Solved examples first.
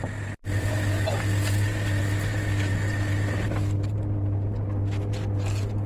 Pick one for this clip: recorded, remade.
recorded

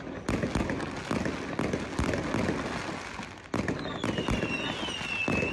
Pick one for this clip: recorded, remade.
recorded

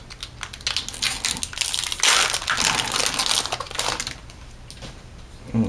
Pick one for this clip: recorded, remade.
recorded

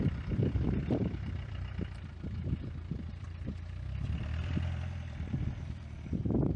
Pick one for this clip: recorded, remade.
remade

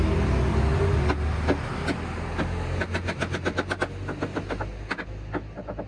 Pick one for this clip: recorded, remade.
recorded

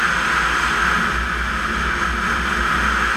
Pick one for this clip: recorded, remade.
recorded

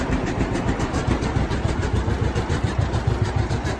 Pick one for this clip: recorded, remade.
remade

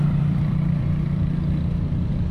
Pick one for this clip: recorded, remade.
remade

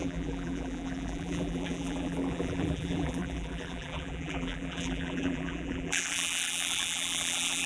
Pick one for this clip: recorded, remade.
remade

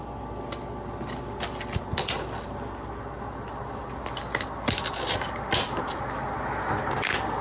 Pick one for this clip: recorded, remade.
recorded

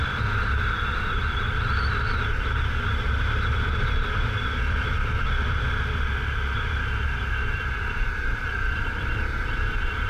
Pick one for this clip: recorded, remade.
remade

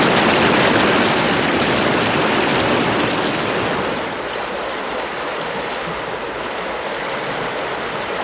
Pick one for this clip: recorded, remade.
recorded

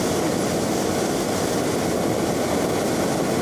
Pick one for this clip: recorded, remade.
recorded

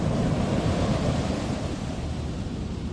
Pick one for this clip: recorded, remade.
remade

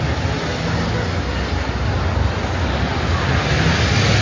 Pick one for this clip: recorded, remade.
recorded